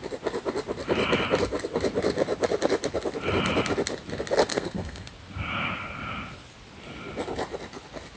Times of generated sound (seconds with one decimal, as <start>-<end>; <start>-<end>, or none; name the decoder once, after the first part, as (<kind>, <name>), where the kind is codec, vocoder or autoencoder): 4.5-5.1 (codec, SNAC)